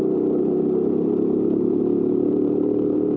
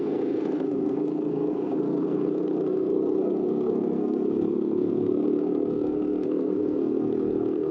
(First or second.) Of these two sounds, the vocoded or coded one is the second